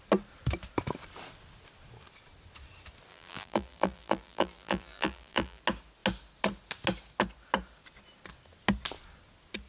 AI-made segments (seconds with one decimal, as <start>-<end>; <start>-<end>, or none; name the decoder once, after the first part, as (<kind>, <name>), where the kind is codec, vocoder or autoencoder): 3.1-5.6 (vocoder, BigVGAN v2)